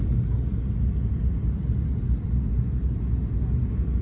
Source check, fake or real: real